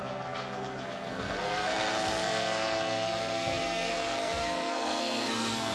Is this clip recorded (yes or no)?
no